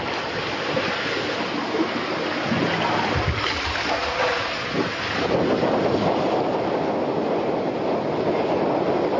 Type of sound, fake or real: real